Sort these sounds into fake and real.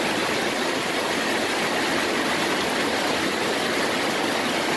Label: real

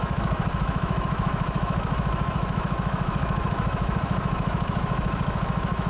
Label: fake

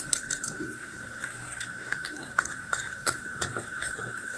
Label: fake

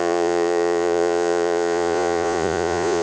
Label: fake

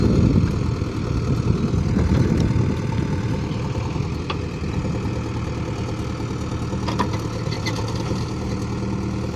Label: real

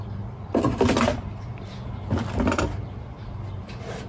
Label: real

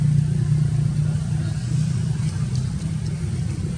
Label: real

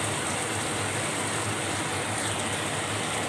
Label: real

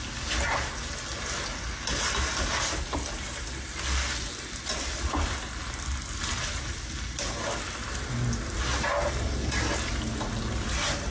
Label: real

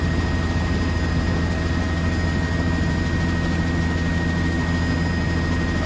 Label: real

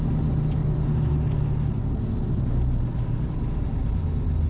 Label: real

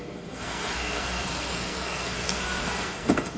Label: fake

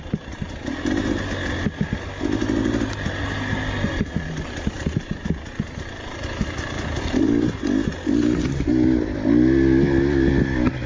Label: real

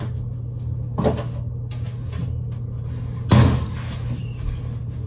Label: real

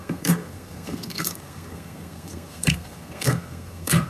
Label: fake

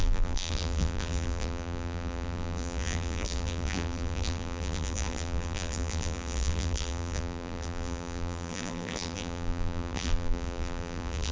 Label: fake